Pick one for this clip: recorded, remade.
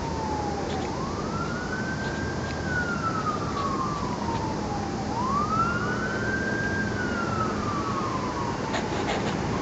recorded